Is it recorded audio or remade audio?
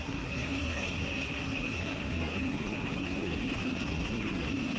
remade